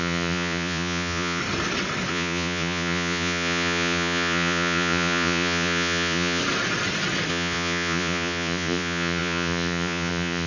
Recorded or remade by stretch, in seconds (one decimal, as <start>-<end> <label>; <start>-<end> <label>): 0.0-1.4 remade; 1.4-2.1 recorded; 2.1-6.4 remade; 6.4-7.3 recorded; 7.3-10.5 remade

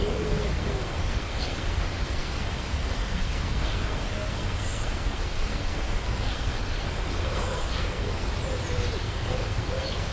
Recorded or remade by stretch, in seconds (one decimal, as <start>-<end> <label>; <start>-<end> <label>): 0.0-8.3 remade; 8.3-9.0 recorded; 9.0-10.1 remade

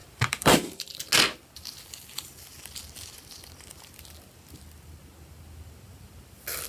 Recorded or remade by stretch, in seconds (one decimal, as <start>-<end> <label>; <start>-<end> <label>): 0.0-1.0 remade; 1.0-6.7 recorded

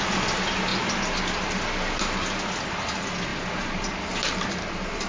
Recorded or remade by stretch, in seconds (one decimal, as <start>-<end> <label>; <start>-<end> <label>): 0.0-3.3 recorded; 3.3-5.1 remade

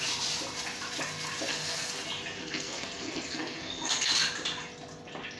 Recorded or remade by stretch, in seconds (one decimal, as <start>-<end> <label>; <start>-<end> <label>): 0.0-1.5 recorded; 1.5-2.0 remade; 2.0-2.4 recorded; 2.4-4.1 remade; 4.1-5.4 recorded

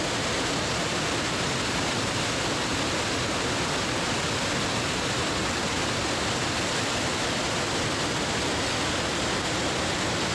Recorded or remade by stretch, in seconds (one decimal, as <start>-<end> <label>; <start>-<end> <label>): 0.0-10.3 recorded

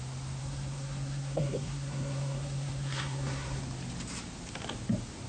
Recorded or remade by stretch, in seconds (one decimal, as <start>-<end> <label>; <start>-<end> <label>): 0.0-0.4 recorded; 0.4-3.6 remade; 3.6-5.3 recorded

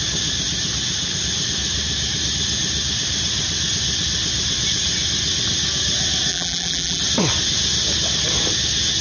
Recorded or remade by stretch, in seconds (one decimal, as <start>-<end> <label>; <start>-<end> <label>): 0.0-6.3 recorded; 6.3-7.0 remade; 7.0-9.0 recorded